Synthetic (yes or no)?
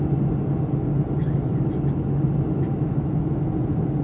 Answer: no